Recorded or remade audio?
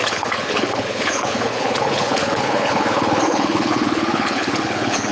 remade